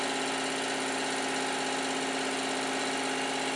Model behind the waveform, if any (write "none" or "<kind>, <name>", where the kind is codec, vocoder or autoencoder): none